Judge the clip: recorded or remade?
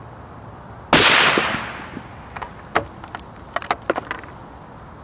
recorded